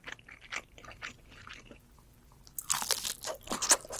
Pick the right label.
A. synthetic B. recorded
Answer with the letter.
B